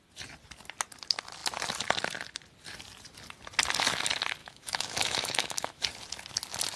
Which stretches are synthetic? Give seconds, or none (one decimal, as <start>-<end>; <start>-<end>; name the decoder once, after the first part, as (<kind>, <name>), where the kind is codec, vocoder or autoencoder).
4.4-5.8 (autoencoder, DAC-VAE)